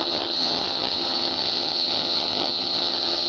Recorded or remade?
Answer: remade